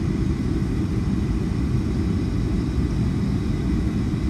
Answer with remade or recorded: recorded